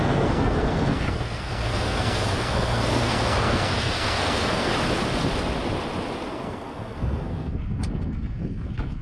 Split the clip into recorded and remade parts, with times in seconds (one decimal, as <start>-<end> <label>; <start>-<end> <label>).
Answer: 0.0-4.7 remade; 4.7-6.3 recorded; 6.3-9.0 remade